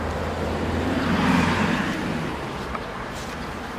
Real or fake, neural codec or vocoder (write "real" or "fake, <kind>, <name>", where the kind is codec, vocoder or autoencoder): fake, vocoder, BigVGAN v2